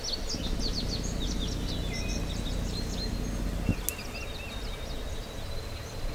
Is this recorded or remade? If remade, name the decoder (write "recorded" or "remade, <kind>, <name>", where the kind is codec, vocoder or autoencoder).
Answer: recorded